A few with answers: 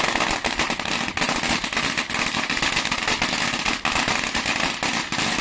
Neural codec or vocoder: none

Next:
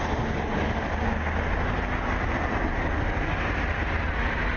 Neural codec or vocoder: none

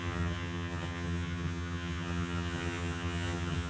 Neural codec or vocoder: vocoder, HiFi-GAN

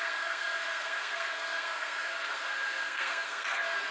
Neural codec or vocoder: codec, SNAC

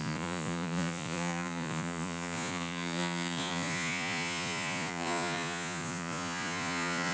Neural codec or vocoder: vocoder, Vocos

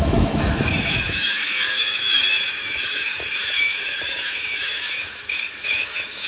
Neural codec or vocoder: autoencoder, DAC-VAE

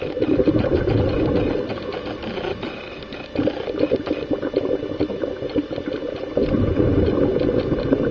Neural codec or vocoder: none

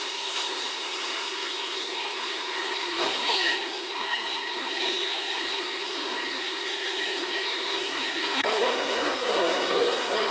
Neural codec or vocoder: codec, SNAC